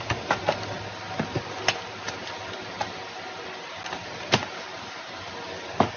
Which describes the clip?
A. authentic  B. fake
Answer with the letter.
A